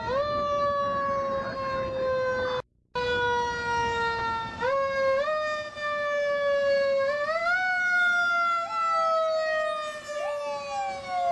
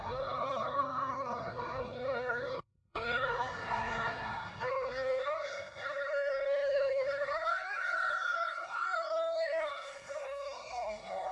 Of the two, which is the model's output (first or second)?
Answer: second